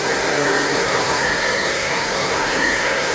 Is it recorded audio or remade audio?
remade